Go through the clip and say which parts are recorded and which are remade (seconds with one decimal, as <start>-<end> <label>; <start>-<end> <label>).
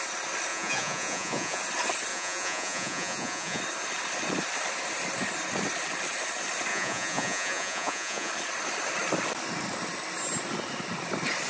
0.0-0.5 recorded; 0.5-1.6 remade; 1.6-2.1 recorded; 2.1-3.6 remade; 3.6-6.7 recorded; 6.7-8.3 remade; 8.3-11.5 recorded